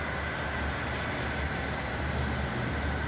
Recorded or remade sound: recorded